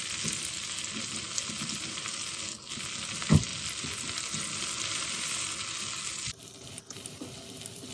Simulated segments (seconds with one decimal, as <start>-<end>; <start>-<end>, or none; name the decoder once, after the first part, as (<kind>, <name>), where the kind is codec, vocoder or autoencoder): none